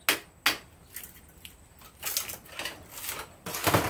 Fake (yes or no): no